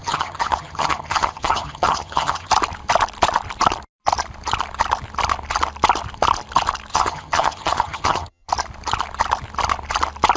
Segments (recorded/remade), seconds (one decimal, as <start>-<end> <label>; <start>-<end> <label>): 0.0-2.5 remade; 2.5-6.9 recorded; 6.9-8.5 remade; 8.5-10.4 recorded